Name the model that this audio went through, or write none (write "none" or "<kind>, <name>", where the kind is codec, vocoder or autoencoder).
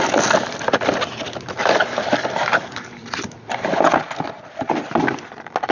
none